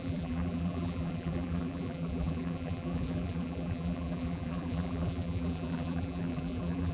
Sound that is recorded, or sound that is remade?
remade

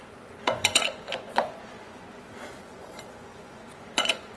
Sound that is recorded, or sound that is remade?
remade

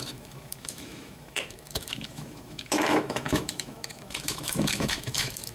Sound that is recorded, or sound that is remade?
remade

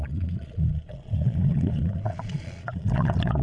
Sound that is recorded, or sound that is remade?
remade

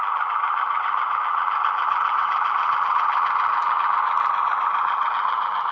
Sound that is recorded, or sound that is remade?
remade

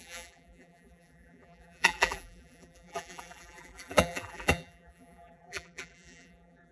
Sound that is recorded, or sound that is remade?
remade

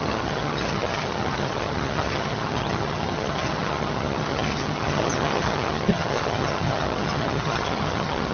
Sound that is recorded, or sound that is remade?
remade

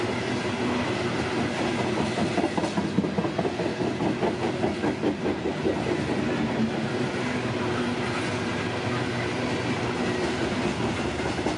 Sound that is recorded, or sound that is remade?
recorded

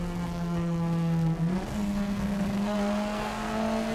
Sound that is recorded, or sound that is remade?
remade